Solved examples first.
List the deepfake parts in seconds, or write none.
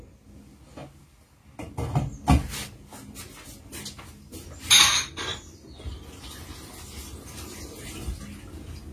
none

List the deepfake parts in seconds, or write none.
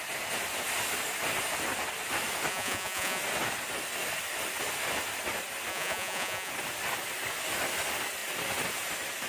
2.5-3.2 (vocoder, Vocos); 5.7-6.5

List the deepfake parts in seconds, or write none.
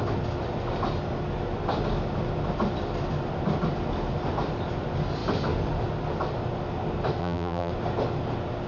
7.2-7.7 (vocoder, BigVGAN v2)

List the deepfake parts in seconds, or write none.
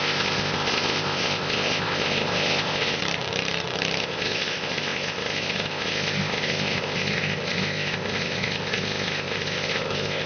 0.0-3.0 (codec, ZipCodec); 4.0-10.3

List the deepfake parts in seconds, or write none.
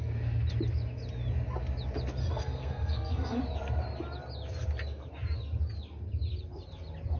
2.2-3.4 (codec, SNAC)